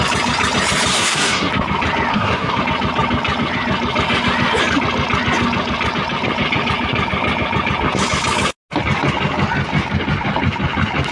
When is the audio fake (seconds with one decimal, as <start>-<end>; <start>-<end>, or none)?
0.9-1.5; 2.1-2.6